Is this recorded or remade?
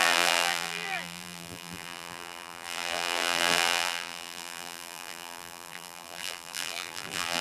remade